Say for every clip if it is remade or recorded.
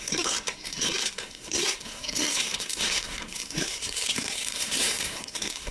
remade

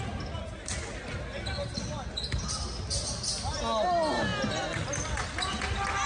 recorded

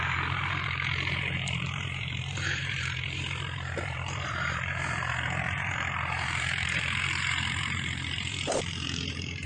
remade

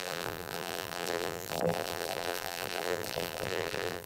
remade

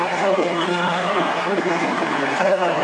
remade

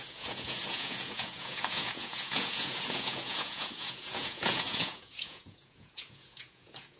remade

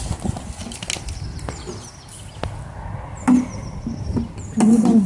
recorded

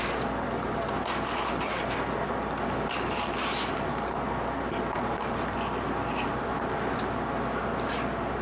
recorded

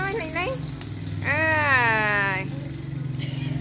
recorded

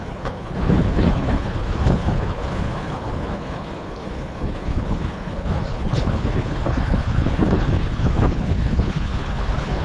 remade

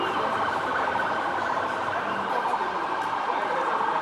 recorded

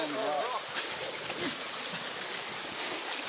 remade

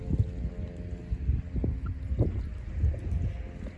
recorded